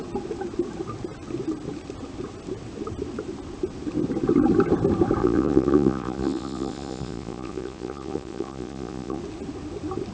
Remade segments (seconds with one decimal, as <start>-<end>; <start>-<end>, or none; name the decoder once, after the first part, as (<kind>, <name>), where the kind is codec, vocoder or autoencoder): 5.2-9.2 (vocoder, Vocos)